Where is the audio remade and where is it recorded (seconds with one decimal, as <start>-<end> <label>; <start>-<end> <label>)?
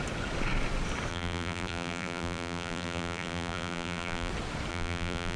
0.0-1.1 recorded; 1.1-4.3 remade; 4.3-4.7 recorded; 4.7-5.4 remade